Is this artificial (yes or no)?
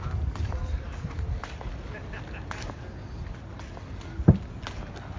no